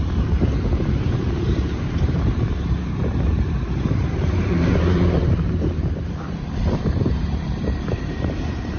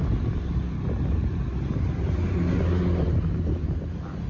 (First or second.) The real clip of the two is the second